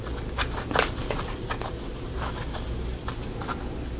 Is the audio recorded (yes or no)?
yes